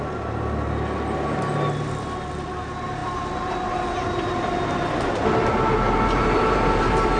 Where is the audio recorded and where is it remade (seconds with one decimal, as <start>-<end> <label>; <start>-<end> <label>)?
0.0-7.2 recorded